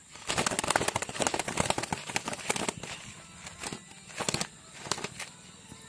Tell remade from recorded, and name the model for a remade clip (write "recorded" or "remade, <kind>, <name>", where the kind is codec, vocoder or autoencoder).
recorded